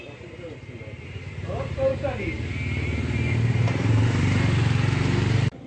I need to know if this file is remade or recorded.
remade